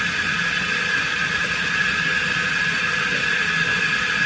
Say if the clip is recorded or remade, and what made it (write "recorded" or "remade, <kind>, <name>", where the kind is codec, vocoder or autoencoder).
recorded